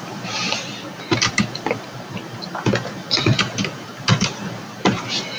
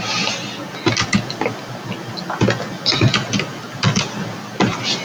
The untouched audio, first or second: second